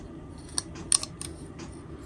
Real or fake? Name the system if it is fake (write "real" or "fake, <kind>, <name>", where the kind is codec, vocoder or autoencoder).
real